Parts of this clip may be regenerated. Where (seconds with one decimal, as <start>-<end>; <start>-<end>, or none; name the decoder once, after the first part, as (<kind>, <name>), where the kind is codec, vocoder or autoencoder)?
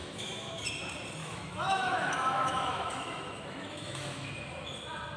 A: 0.0-0.6 (autoencoder, DAC-VAE); 1.2-4.3